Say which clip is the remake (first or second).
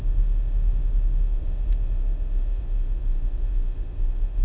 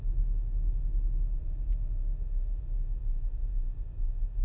first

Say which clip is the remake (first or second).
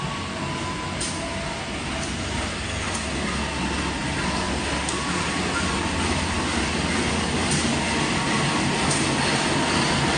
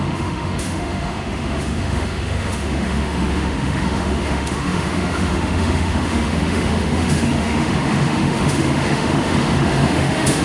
second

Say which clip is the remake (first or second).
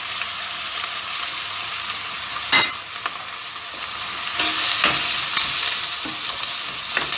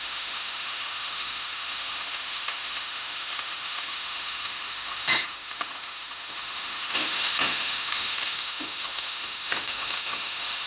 second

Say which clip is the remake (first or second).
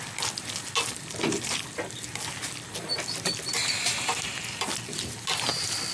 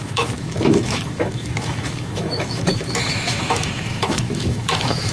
second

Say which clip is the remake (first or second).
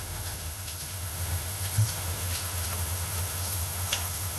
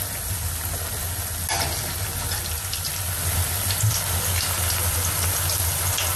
first